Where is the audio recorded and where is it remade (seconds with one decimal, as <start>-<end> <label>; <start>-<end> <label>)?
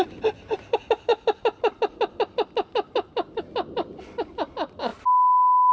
0.0-5.7 recorded